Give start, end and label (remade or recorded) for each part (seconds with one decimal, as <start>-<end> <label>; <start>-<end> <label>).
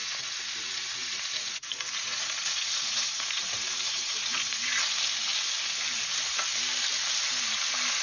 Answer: 0.0-4.8 remade; 4.8-8.0 recorded